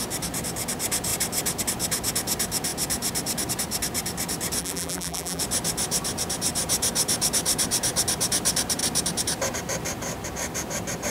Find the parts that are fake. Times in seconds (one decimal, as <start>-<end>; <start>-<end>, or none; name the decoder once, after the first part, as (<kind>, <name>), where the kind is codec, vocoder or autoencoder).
4.6-5.4 (vocoder, BigVGAN v2)